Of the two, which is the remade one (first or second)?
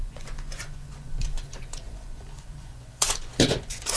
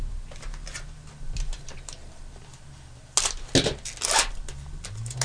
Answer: first